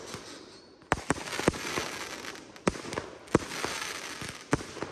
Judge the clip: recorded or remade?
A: recorded